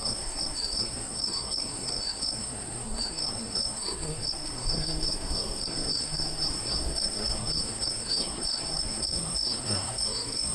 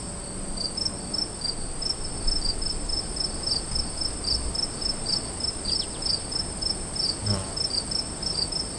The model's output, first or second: first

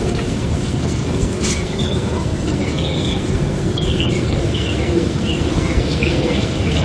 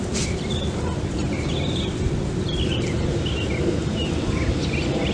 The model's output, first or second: first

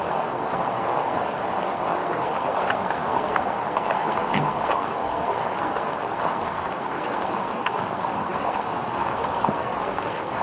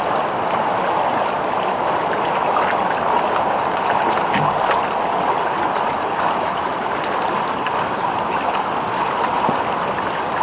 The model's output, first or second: first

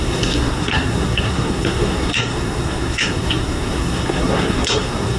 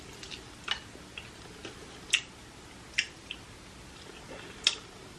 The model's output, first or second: first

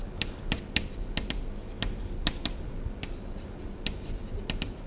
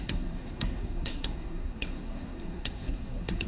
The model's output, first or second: second